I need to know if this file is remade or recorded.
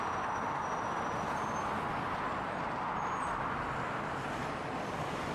recorded